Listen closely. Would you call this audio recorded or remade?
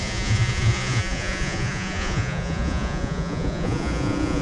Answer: remade